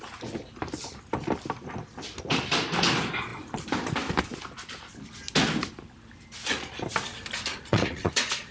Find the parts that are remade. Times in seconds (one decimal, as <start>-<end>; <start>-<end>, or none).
7.5-8.5